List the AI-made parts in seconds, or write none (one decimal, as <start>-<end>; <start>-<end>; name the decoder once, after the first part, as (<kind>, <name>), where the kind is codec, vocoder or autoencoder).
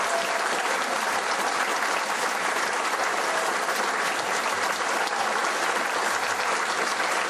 none